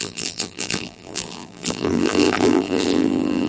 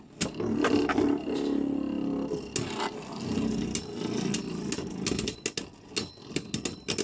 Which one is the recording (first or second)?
second